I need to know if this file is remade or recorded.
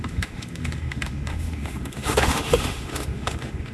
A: remade